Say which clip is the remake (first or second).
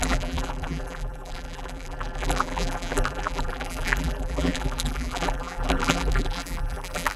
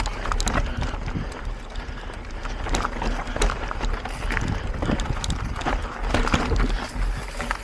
first